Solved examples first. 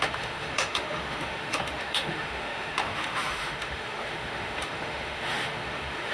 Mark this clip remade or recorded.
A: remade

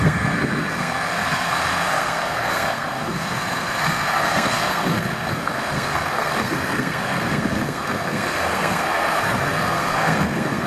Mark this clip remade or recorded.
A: remade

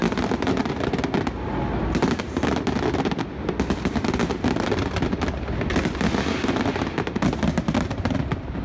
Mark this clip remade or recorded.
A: recorded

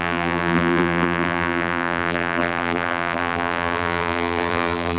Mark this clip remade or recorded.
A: remade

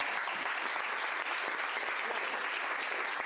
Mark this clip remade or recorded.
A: recorded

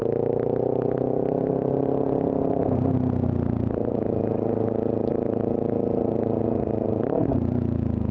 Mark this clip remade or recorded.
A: recorded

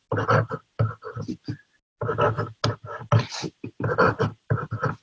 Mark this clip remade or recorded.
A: recorded